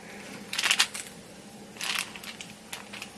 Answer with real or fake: real